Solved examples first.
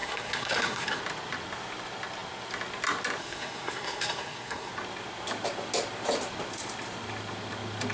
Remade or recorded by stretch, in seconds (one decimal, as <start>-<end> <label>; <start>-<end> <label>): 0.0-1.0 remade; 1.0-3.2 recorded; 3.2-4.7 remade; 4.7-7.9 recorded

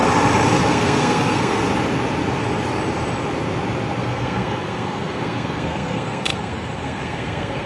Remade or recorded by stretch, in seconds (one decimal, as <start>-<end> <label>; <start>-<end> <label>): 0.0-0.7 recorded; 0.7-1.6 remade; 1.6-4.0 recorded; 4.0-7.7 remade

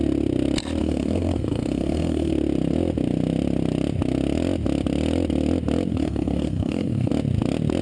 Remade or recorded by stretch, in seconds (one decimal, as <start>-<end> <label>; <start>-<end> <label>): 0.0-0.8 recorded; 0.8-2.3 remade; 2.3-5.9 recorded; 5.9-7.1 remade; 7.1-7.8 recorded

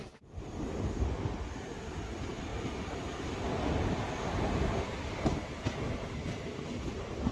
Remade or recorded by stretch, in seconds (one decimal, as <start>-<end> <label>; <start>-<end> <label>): 0.0-7.3 recorded

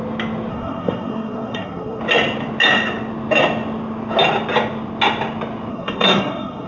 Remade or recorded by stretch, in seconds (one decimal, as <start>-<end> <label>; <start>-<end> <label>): 0.0-0.5 recorded; 0.5-2.0 remade; 2.0-5.7 recorded; 5.7-6.7 remade